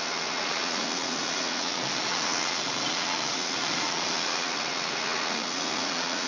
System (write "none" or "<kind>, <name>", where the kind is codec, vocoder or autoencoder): vocoder, Vocos